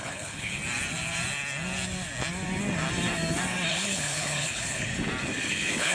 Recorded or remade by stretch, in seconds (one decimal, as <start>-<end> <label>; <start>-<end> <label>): 0.0-0.6 remade; 0.6-3.7 recorded; 3.7-4.9 remade; 4.9-5.5 recorded; 5.5-5.9 remade